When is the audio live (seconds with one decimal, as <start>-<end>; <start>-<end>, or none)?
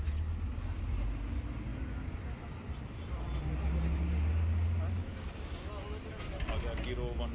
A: 0.0-7.3